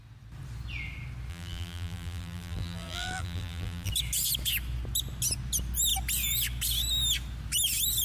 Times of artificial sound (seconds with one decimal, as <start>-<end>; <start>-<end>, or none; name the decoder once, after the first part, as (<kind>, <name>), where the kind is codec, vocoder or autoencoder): 1.3-3.9 (vocoder, BigVGAN v2)